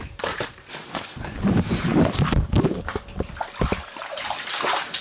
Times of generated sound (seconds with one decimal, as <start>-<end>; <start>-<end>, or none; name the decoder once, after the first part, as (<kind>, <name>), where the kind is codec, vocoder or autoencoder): 0.0-1.9 (vocoder, BigVGAN v2); 3.9-5.0